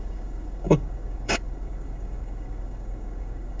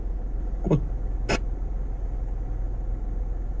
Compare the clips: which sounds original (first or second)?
second